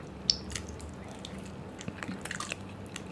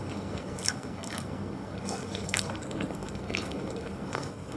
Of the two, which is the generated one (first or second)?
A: second